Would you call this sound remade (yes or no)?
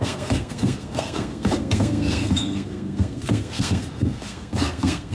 yes